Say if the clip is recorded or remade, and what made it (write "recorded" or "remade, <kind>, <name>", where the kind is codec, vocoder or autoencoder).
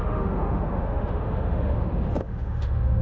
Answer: remade, autoencoder, DAC-VAE